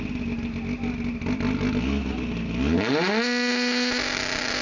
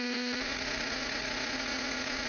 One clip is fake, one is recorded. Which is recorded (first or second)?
first